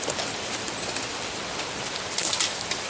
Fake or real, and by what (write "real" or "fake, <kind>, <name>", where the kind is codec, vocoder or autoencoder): fake, vocoder, BigVGAN v2